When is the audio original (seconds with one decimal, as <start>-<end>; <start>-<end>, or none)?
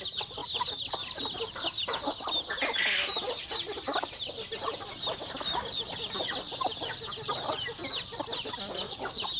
0.0-9.4